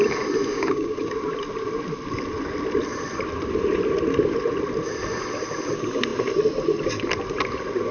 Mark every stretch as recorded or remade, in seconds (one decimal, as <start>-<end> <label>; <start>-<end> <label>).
0.0-0.5 recorded; 0.5-1.0 remade; 1.0-7.9 recorded